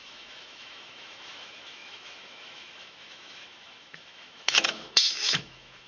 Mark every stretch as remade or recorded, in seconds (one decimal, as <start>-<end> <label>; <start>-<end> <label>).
0.0-5.9 remade